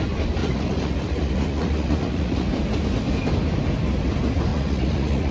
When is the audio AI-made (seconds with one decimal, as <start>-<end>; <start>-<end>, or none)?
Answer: 0.4-2.5; 4.5-5.3